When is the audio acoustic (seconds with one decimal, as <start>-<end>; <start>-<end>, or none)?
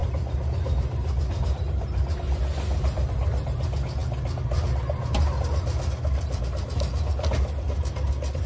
0.0-8.5